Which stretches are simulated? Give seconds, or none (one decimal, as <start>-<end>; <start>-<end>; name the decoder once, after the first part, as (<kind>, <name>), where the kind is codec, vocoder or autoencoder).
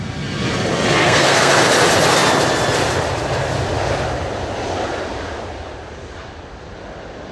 1.0-1.5 (codec, SNAC)